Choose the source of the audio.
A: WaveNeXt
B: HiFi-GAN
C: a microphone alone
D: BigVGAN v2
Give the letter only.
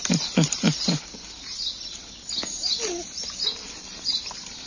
C